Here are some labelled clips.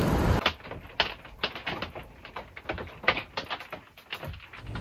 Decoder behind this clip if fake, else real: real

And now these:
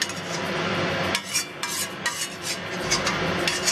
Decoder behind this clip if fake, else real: real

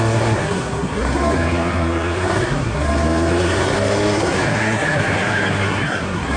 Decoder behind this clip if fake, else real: fake, codec, SNAC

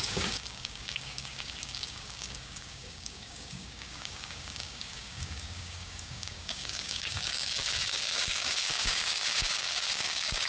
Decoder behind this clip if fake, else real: fake, codec, DAC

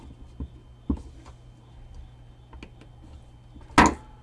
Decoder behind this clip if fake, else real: real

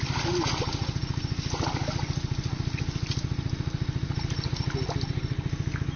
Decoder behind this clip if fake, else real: real